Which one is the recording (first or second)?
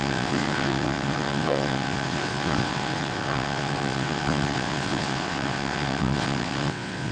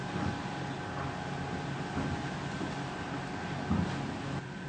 second